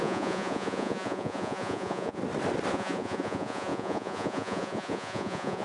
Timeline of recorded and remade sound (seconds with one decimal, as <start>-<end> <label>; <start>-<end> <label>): 0.0-2.2 remade; 2.2-2.7 recorded; 2.7-5.6 remade